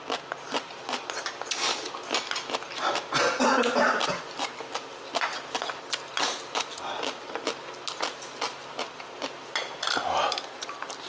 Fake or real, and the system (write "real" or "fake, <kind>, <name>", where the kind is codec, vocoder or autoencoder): real